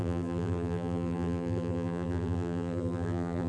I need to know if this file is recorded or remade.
remade